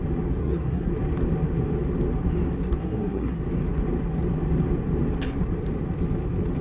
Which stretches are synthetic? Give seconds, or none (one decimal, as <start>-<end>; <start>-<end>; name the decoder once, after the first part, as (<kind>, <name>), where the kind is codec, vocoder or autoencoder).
0.4-0.9 (codec, SNAC); 2.8-3.4